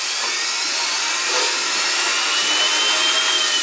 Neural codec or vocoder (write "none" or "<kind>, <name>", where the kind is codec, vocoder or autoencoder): none